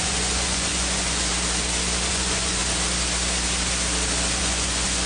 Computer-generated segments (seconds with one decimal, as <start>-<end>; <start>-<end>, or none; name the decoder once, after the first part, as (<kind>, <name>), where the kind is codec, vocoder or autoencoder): 0.0-1.3 (vocoder, Vocos); 2.1-2.6; 4.4-5.1